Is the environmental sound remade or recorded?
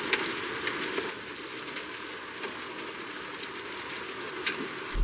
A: recorded